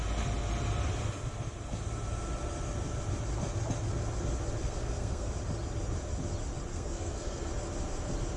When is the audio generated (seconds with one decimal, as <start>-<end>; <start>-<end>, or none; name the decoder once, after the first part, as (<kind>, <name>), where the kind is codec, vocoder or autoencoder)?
4.6-5.3 (codec, SNAC); 6.7-7.5